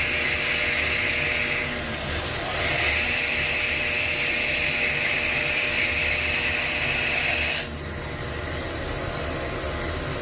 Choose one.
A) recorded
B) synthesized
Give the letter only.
A